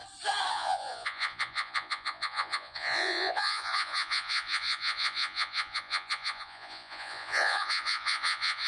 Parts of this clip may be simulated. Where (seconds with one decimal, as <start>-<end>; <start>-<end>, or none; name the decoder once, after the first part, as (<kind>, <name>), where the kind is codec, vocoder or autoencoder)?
0.5-8.7 (vocoder, Vocos)